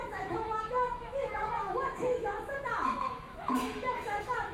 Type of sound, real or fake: fake